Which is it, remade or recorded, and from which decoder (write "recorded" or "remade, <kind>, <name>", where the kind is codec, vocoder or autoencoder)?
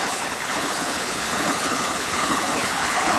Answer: remade, codec, HILCodec